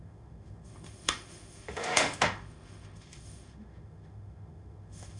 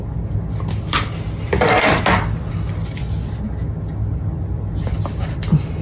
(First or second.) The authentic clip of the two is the second